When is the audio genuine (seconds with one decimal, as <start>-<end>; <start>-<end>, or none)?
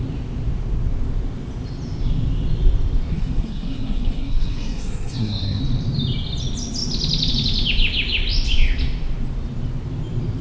0.0-3.1; 5.6-10.4